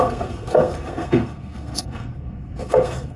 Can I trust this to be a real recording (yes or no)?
no